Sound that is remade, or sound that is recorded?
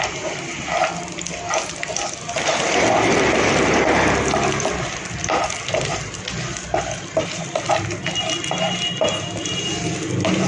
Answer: recorded